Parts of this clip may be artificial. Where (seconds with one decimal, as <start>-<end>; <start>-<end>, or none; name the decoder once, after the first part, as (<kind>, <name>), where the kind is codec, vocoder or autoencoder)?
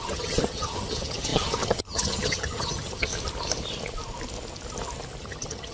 0.0-3.1 (vocoder, HiFi-GAN); 5.2-5.7